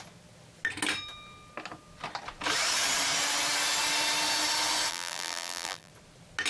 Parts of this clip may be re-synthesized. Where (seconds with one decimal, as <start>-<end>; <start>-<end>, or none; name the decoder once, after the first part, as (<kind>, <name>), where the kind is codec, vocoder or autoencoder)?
4.9-5.9 (vocoder, BigVGAN v2)